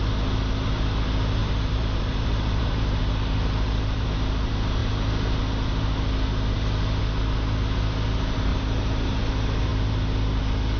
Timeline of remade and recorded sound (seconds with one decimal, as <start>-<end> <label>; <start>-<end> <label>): 0.0-1.4 recorded; 1.4-3.1 remade; 3.1-8.5 recorded; 8.5-9.2 remade; 9.2-10.8 recorded